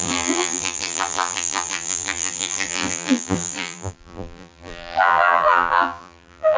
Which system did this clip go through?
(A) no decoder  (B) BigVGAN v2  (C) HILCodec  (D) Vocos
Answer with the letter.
B